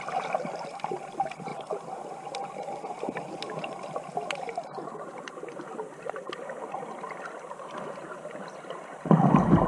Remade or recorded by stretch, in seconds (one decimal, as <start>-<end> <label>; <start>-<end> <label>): 0.0-9.7 recorded